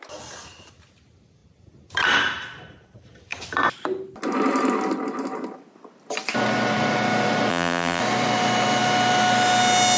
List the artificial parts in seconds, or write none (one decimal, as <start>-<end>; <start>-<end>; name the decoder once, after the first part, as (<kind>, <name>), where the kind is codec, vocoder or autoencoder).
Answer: 7.5-8.0 (vocoder, BigVGAN v2)